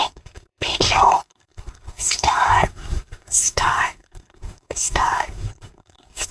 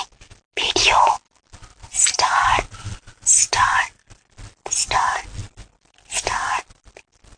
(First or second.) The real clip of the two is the second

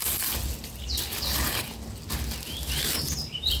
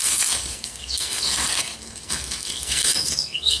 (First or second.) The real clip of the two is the first